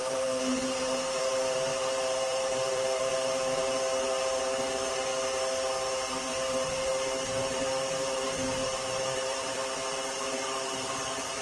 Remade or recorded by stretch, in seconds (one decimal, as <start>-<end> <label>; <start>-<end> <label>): 0.0-5.1 remade; 5.1-7.4 recorded; 7.4-11.4 remade